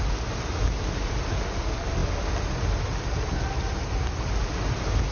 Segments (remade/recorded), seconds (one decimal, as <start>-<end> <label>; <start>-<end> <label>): 0.0-5.1 recorded